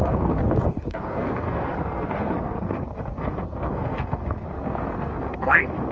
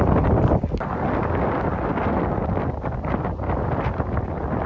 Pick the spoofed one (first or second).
first